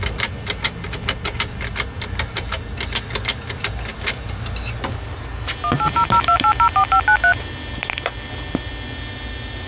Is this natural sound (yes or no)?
yes